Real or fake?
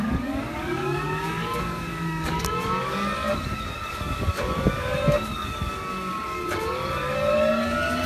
fake